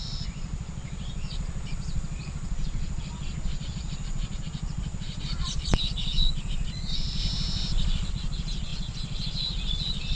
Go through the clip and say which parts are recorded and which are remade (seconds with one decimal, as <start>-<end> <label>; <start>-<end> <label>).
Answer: 0.0-7.2 remade; 7.2-8.1 recorded; 8.1-10.2 remade